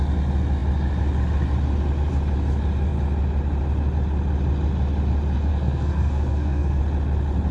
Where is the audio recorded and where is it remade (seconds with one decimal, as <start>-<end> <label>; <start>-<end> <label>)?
0.0-5.5 recorded; 5.5-6.8 remade; 6.8-7.5 recorded